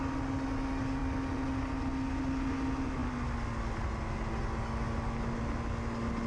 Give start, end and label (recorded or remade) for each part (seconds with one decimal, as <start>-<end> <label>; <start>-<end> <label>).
0.0-6.3 recorded